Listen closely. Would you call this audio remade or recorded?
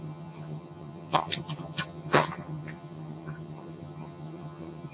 remade